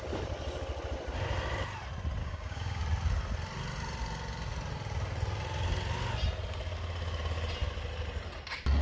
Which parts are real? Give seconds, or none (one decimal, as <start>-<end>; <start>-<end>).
0.0-2.2; 2.8-8.8